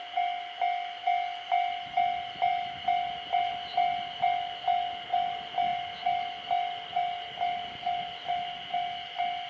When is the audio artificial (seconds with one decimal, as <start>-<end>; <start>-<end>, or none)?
none